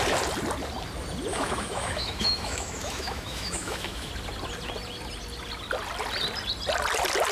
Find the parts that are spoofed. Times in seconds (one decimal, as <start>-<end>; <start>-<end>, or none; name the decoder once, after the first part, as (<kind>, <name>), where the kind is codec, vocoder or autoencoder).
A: 1.3-4.1 (autoencoder, DAC-VAE)